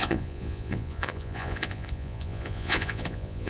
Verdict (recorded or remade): remade